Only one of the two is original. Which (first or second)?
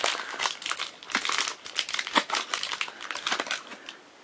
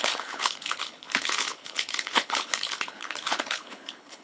first